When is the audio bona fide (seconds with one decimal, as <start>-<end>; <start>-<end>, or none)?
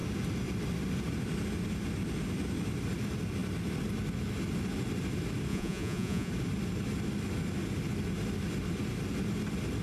0.0-5.5; 6.3-9.8